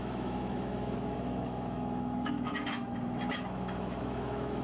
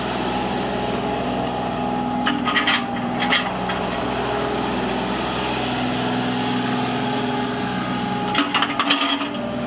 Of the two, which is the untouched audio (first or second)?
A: second